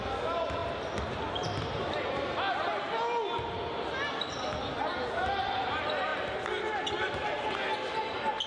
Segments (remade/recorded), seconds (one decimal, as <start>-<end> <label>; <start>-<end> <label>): 0.0-8.5 recorded